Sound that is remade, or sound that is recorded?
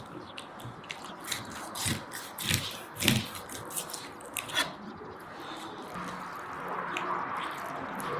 recorded